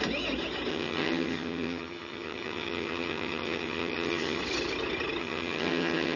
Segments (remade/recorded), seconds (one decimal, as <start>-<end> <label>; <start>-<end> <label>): 0.0-0.7 recorded; 0.7-4.4 remade; 4.4-5.2 recorded; 5.2-6.2 remade